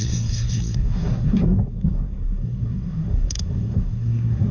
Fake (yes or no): yes